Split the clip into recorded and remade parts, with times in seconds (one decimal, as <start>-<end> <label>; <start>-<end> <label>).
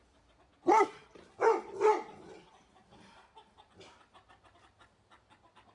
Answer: 0.0-5.7 recorded